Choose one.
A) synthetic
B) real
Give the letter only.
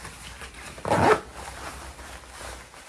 B